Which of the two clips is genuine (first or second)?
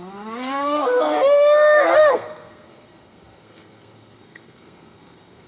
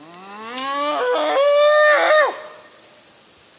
second